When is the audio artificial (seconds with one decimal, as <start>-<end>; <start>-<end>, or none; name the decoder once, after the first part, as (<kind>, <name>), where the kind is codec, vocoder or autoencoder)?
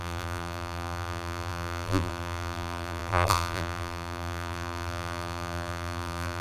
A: 0.0-6.4 (vocoder, BigVGAN v2)